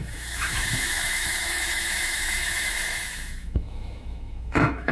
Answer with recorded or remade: remade